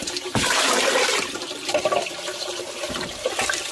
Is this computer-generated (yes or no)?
yes